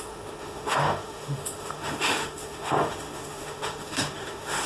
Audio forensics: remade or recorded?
remade